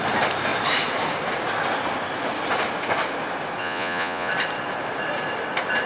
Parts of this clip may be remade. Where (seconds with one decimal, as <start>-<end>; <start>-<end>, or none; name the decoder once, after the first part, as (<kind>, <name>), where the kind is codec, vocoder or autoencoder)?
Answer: 3.6-4.3 (vocoder, Vocos)